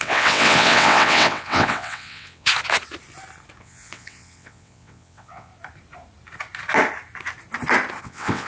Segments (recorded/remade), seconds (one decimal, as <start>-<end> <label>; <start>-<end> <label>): 0.0-2.5 remade; 2.5-3.6 recorded; 3.6-5.5 remade; 5.5-8.0 recorded; 8.0-8.5 remade